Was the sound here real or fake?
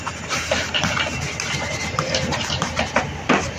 real